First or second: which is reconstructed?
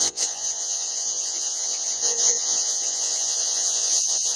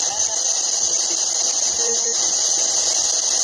first